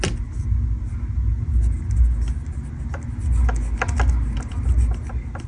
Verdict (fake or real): real